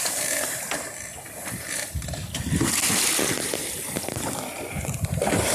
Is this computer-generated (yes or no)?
yes